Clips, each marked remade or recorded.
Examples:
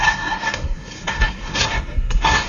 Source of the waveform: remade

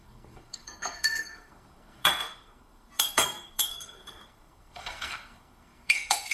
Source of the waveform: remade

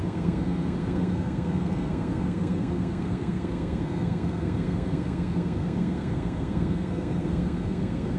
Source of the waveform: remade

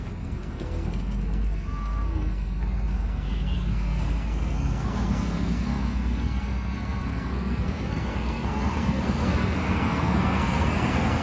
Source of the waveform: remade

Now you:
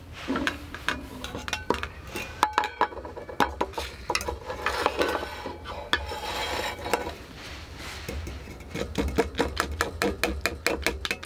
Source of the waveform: recorded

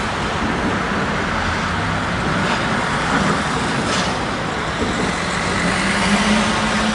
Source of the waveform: recorded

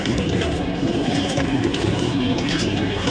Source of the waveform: remade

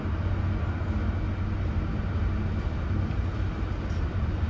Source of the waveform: recorded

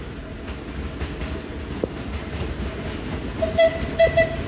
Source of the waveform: recorded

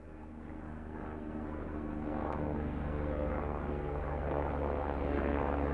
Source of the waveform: remade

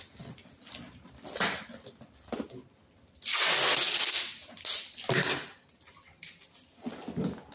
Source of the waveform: recorded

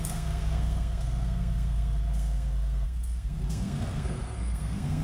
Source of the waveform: remade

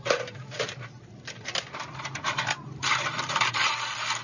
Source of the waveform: recorded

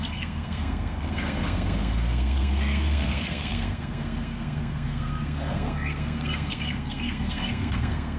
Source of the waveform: remade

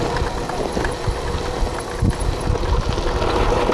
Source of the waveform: recorded